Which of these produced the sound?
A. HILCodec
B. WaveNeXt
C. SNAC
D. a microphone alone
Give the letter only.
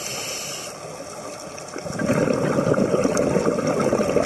D